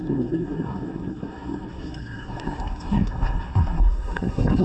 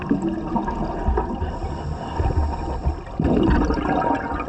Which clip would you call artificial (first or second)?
first